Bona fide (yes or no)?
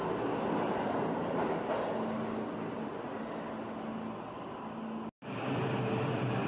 yes